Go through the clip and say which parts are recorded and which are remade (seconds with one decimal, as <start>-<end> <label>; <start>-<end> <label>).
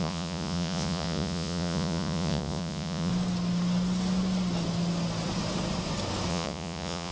0.0-3.1 remade; 3.1-6.3 recorded; 6.3-7.1 remade